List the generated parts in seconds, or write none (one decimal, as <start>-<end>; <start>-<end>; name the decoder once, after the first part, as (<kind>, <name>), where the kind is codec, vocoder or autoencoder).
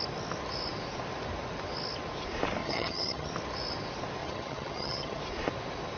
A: 2.6-3.3 (vocoder, HiFi-GAN); 4.2-5.2